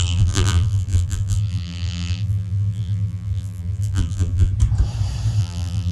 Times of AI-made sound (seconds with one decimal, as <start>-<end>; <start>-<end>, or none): 0.0-4.5; 5.4-5.9